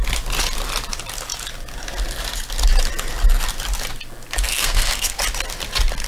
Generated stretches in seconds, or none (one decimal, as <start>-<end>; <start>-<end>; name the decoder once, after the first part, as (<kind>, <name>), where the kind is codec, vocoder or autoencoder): 4.5-5.2 (codec, SNAC)